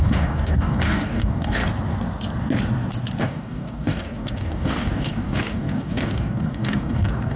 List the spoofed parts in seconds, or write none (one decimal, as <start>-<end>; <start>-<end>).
0.0-1.6; 3.2-7.4